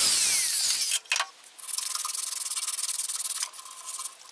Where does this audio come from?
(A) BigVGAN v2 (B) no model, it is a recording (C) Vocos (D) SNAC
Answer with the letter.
B